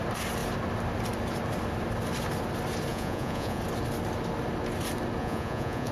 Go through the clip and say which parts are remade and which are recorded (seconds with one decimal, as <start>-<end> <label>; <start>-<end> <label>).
0.0-2.9 recorded; 2.9-3.6 remade; 3.6-5.2 recorded; 5.2-5.9 remade